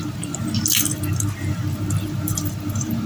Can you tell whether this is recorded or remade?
remade